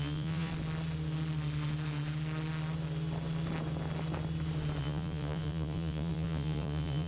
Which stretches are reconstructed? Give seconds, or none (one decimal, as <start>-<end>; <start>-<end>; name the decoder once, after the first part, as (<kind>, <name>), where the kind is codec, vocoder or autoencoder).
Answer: 0.0-0.5 (vocoder, Vocos); 4.8-7.1